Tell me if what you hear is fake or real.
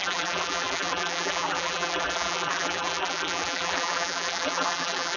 fake